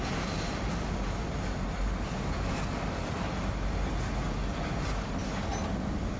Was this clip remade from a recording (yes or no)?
no